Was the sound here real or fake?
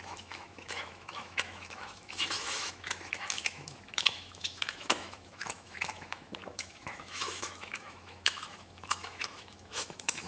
fake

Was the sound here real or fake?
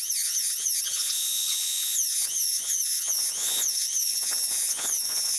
fake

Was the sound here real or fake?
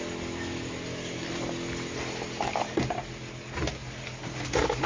real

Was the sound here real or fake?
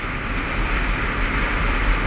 fake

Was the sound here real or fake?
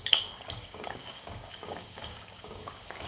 fake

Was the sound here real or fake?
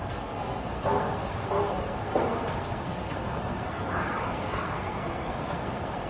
fake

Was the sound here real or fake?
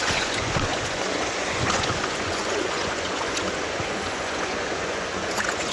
fake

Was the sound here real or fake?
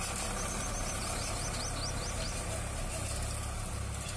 real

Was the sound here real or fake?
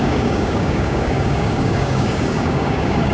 fake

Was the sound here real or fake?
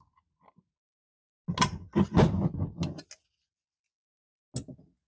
real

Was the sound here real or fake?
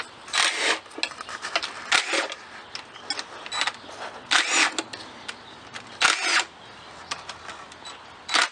real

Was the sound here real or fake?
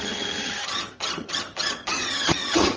fake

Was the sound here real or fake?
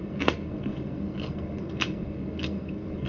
fake